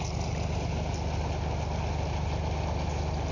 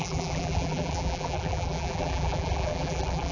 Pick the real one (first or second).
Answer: first